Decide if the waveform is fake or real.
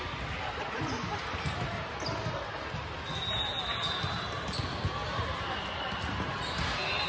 real